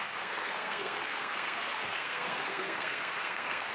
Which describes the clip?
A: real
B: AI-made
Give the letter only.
B